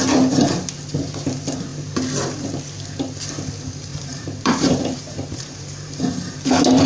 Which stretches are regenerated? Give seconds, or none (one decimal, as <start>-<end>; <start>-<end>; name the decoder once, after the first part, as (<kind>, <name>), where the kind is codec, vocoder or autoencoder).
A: 3.9-6.0 (vocoder, BigVGAN v2)